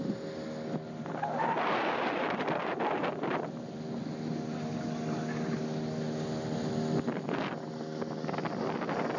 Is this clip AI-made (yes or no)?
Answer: no